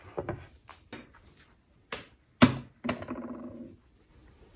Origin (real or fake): real